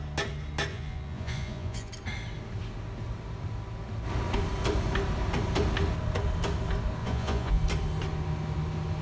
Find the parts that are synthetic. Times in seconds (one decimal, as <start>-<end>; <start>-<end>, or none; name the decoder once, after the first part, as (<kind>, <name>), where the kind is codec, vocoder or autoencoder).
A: 0.7-1.9 (vocoder, Vocos); 7.0-7.6